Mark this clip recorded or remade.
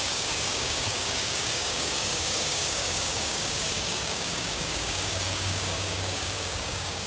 remade